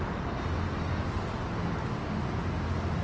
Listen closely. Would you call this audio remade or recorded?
recorded